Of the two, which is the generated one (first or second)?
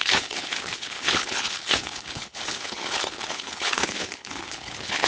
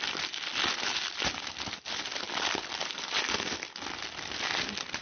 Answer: first